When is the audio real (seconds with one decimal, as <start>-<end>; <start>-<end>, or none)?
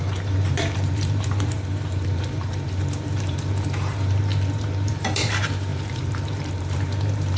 none